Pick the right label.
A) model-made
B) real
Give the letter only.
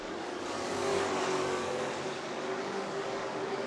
A